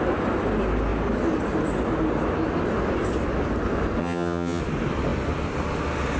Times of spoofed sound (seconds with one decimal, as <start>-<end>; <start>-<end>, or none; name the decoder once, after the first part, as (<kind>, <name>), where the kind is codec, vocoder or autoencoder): 4.0-4.6 (vocoder, HiFi-GAN)